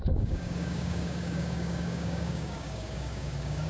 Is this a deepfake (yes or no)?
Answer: yes